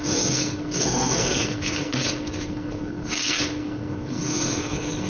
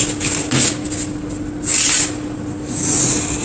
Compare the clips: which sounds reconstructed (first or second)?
first